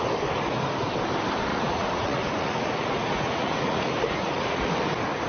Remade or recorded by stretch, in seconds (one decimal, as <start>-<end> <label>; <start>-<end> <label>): 0.0-1.5 recorded; 1.5-4.7 remade; 4.7-5.3 recorded